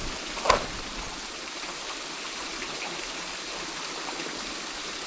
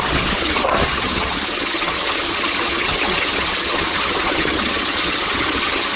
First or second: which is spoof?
second